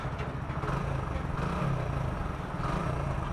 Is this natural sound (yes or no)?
yes